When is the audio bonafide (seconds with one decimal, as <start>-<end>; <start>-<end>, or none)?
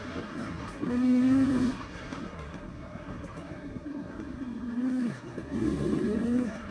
none